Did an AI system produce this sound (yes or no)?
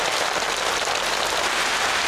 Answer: no